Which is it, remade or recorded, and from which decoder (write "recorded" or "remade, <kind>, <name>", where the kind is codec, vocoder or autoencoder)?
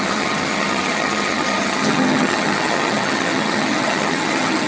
remade, vocoder, HiFi-GAN